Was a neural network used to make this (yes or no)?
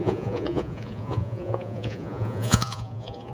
yes